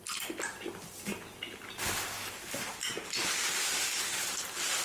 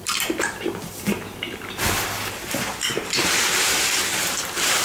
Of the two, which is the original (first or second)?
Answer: first